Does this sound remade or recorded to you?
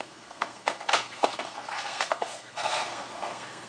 remade